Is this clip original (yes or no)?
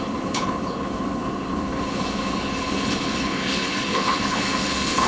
no